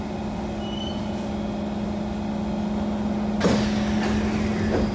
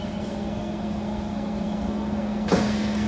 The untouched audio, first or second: first